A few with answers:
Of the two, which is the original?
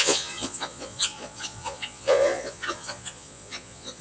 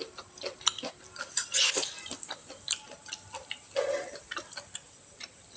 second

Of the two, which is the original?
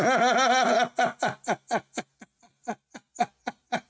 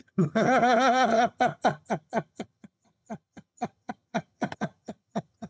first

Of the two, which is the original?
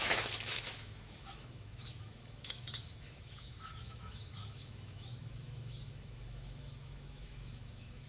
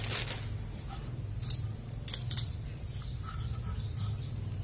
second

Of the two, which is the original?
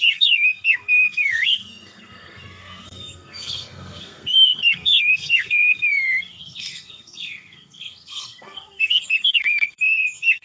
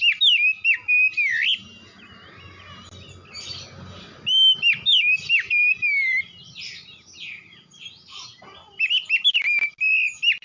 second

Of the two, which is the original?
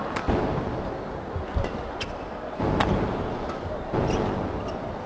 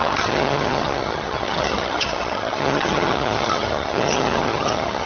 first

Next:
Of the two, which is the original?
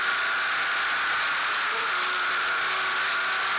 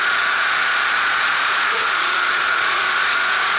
first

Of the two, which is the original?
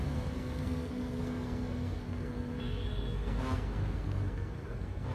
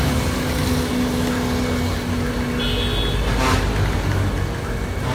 second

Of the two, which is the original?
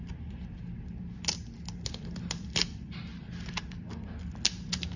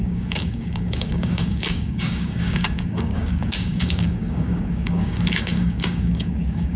first